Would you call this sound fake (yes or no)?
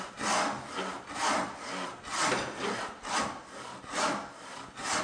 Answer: no